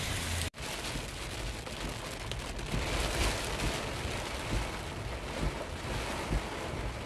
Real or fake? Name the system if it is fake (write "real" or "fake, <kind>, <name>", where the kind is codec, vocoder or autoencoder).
real